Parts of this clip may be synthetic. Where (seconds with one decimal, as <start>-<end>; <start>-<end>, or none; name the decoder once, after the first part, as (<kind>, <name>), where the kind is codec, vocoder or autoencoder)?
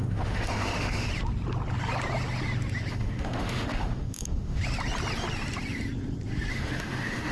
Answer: 0.0-1.1 (autoencoder, DAC-VAE); 2.9-4.6; 6.5-7.3